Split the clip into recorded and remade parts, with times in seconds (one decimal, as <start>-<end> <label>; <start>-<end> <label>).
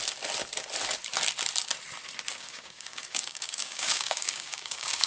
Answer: 0.0-2.3 recorded; 2.3-5.1 remade